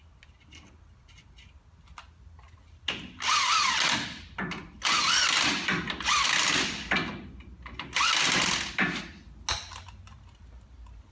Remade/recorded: recorded